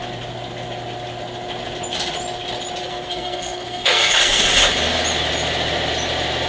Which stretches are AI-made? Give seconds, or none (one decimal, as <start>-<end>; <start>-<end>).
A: 2.8-4.4